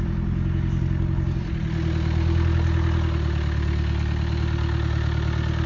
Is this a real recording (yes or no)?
yes